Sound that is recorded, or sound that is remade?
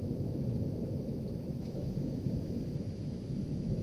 remade